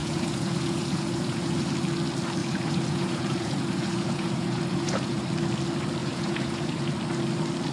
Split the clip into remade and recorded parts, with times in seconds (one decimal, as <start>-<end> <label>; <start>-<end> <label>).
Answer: 0.0-1.7 remade; 1.7-2.4 recorded; 2.4-5.2 remade; 5.2-6.0 recorded; 6.0-6.9 remade; 6.9-7.7 recorded